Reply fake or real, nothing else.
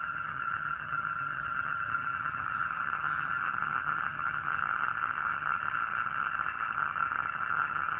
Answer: fake